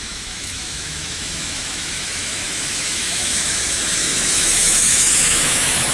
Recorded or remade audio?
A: remade